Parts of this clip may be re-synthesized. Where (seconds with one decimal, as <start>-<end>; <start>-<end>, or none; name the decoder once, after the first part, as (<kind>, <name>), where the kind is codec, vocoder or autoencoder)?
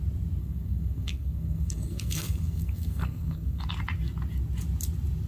0.4-3.6 (codec, SNAC)